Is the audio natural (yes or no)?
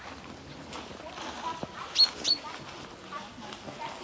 yes